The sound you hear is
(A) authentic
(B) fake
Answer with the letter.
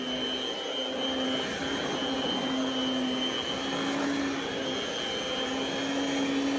A